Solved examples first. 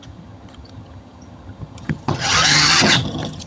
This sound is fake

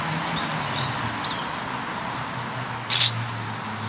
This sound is real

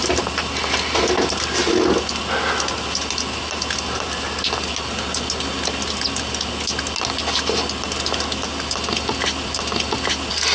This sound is real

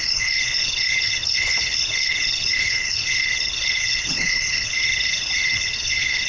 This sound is fake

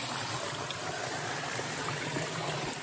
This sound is real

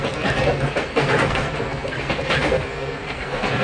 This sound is fake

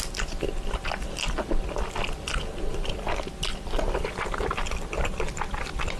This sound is real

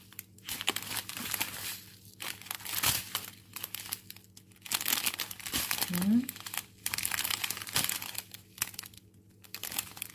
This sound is real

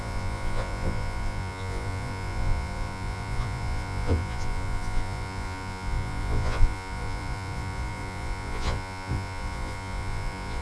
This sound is fake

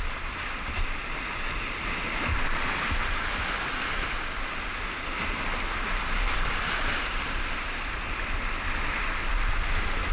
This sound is real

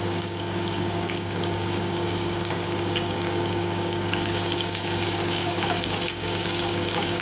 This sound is fake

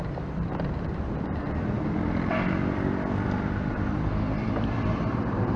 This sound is fake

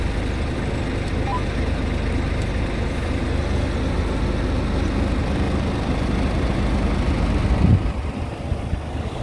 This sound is real